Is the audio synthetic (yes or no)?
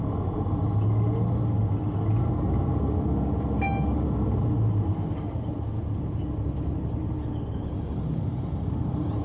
no